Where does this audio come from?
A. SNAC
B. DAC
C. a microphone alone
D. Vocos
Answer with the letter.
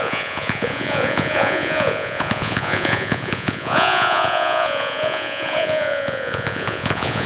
D